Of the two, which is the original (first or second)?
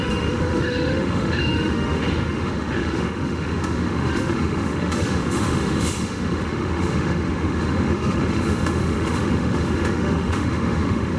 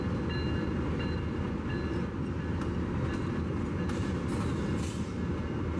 second